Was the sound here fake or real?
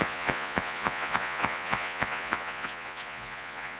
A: fake